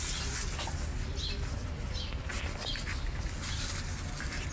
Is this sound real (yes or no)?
yes